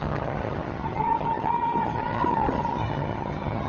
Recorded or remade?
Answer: remade